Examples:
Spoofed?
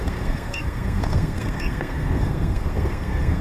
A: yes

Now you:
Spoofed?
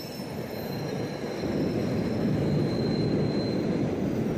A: no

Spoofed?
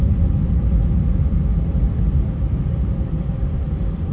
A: yes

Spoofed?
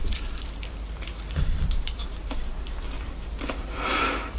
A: yes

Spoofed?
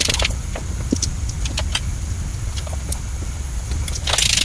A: no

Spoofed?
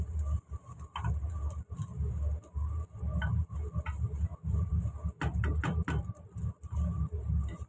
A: no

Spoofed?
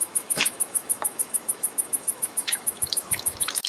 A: yes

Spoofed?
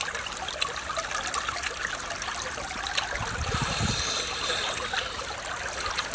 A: no